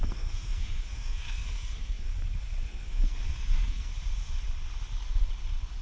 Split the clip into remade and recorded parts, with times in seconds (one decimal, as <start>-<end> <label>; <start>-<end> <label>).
0.0-2.1 remade; 2.1-2.6 recorded; 2.6-3.9 remade; 3.9-5.8 recorded

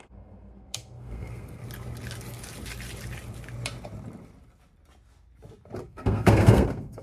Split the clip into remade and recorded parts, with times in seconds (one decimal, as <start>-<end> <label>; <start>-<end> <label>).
0.0-1.6 remade; 1.6-5.8 recorded; 5.8-7.0 remade

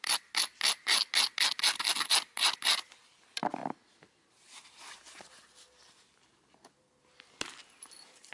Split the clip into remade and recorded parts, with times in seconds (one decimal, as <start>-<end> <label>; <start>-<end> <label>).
0.0-8.3 recorded

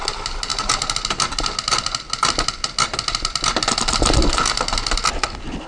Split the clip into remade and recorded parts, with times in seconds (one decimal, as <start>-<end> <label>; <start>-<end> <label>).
0.0-5.7 recorded

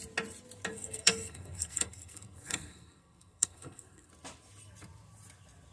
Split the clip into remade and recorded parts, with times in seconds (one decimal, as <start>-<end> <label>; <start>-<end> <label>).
0.0-0.7 recorded; 0.7-4.1 remade; 4.1-5.7 recorded

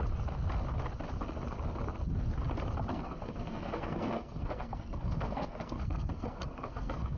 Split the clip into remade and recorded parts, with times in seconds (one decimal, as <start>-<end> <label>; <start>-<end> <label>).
0.0-2.9 recorded; 2.9-7.2 remade

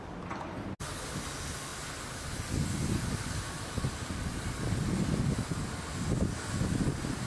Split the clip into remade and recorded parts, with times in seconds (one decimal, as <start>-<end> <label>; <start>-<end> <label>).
0.0-7.3 recorded

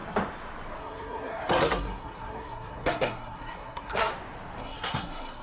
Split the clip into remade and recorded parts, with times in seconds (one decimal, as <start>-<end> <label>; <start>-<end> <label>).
0.0-0.8 recorded; 0.8-4.1 remade; 4.1-4.6 recorded; 4.6-5.4 remade